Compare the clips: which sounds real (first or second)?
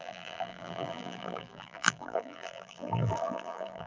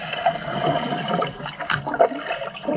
second